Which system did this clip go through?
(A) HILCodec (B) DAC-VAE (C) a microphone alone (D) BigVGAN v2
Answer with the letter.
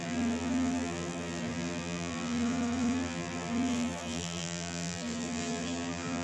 D